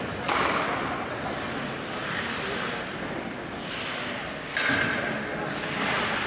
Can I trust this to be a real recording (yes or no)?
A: yes